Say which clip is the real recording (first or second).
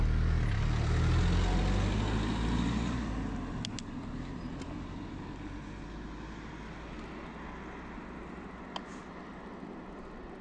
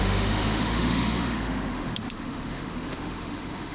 first